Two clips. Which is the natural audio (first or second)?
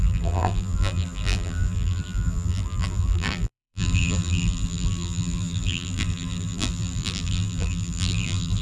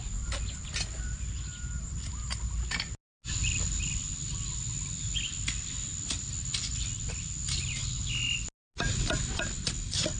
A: second